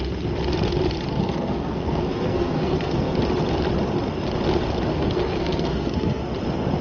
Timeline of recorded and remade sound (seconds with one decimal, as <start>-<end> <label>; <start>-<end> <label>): 0.0-1.1 recorded; 1.1-3.1 remade; 3.1-4.9 recorded; 4.9-6.3 remade; 6.3-6.8 recorded